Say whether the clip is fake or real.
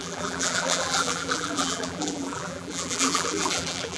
fake